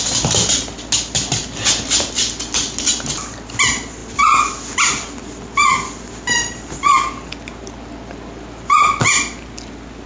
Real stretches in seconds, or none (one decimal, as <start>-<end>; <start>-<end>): 0.0-10.1